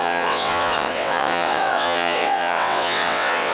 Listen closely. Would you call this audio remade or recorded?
remade